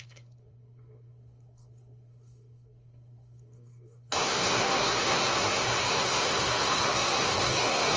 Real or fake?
fake